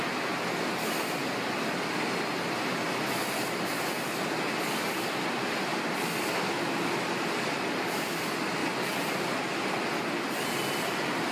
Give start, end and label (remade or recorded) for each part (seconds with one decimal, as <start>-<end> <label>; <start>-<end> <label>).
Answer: 0.0-11.3 recorded